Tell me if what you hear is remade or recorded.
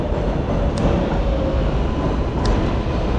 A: recorded